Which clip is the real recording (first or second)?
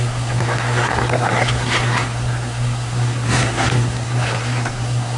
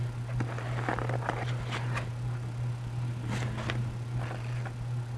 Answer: second